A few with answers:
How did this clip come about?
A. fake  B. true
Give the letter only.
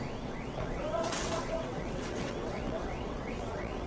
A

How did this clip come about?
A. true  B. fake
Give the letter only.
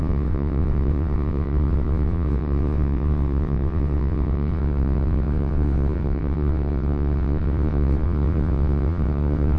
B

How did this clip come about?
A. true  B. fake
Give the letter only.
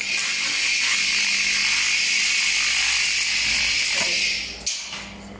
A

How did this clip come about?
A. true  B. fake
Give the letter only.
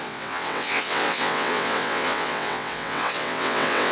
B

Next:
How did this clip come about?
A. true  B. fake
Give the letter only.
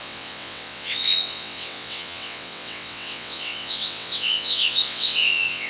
B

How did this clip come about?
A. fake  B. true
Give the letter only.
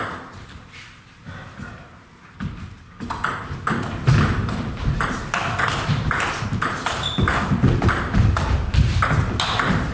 B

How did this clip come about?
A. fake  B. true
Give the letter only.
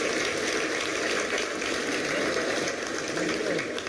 B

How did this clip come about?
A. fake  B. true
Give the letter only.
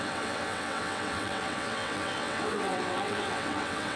A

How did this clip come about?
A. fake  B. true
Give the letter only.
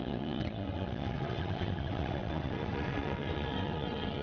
A